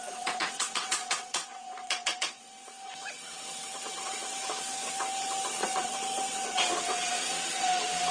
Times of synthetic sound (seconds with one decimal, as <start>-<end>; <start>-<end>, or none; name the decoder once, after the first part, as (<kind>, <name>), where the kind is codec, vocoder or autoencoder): 0.0-8.1 (vocoder, WaveNeXt)